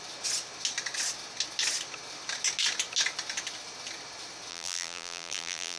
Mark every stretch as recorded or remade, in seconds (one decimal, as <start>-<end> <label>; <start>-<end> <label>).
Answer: 0.0-4.5 recorded; 4.5-5.8 remade

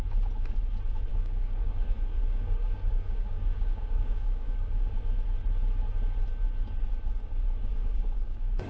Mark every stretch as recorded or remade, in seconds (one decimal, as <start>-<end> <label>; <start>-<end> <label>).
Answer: 0.0-1.1 recorded; 1.1-4.9 remade; 4.9-7.7 recorded; 7.7-8.7 remade

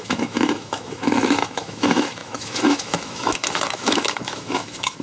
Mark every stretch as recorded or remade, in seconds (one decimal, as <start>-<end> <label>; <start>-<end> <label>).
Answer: 0.0-5.0 remade